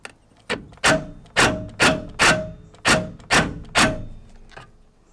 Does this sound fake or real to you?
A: real